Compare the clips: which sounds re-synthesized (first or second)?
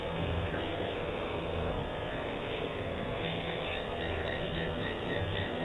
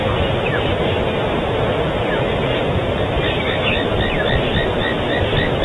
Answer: first